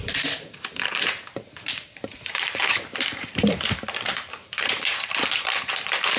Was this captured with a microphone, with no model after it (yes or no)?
no